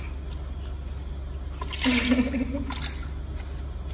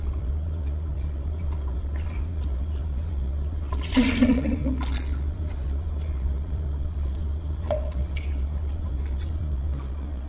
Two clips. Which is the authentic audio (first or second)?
first